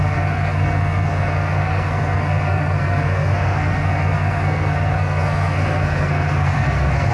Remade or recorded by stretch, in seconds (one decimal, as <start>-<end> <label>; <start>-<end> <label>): 0.0-7.1 remade